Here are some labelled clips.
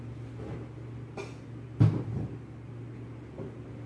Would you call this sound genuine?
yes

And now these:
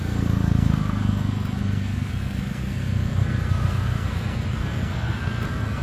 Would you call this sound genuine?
no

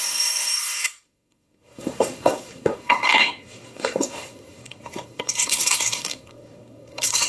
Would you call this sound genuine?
no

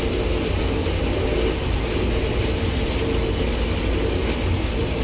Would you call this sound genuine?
yes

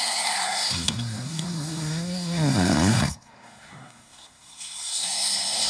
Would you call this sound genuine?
no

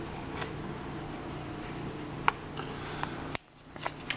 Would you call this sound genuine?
yes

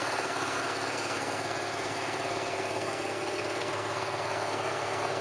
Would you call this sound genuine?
no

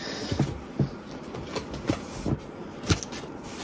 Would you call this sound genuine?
yes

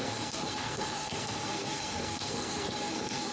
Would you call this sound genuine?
no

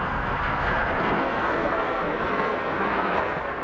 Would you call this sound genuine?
no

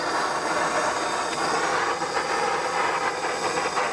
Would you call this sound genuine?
yes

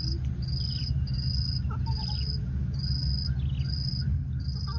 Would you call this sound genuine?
yes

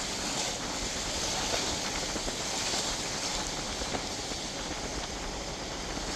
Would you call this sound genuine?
yes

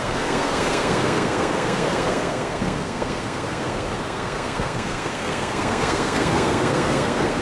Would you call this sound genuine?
no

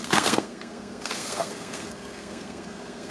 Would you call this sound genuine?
no